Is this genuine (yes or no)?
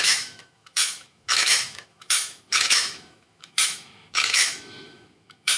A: no